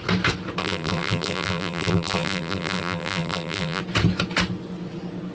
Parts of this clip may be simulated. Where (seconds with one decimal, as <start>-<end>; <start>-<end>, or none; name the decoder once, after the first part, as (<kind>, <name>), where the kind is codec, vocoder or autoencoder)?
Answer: 0.6-3.8 (vocoder, BigVGAN v2)